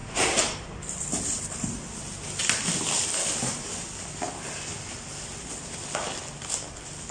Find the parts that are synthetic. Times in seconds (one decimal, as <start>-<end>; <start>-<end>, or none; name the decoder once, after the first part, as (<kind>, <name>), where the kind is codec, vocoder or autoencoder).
0.0-4.3 (vocoder, BigVGAN v2)